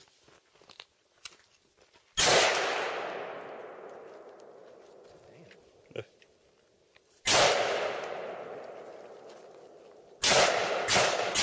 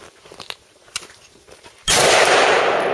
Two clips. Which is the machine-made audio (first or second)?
second